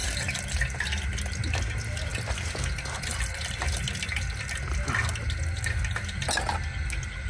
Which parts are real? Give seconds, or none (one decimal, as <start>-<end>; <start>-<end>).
0.0-2.1; 4.2-7.3